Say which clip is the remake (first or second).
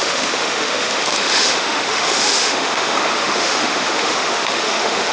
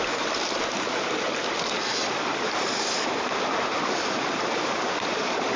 first